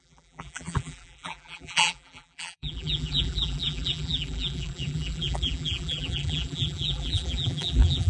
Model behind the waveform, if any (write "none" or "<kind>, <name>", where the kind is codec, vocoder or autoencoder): vocoder, BigVGAN v2